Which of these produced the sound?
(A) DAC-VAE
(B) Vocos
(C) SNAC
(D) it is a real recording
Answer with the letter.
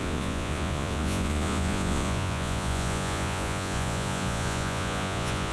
B